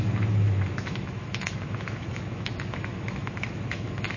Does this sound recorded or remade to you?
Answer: remade